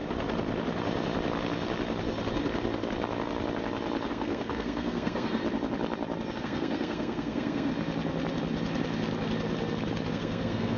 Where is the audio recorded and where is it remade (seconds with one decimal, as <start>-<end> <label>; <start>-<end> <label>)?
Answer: 0.0-4.1 recorded; 4.1-5.4 remade; 5.4-6.4 recorded; 6.4-7.7 remade; 7.7-10.1 recorded; 10.1-10.8 remade